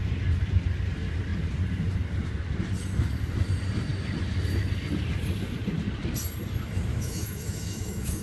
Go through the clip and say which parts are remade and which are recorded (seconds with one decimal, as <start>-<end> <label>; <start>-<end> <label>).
0.0-6.9 recorded; 6.9-8.2 remade